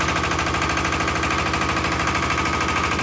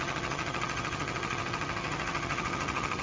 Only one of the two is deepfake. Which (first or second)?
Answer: second